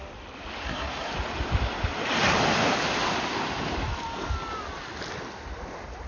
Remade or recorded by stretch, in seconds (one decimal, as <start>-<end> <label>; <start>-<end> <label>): 0.0-0.6 recorded; 0.6-1.1 remade; 1.1-6.1 recorded